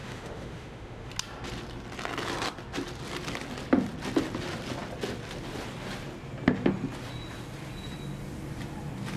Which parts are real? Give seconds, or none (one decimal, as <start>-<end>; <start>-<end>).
1.1-9.2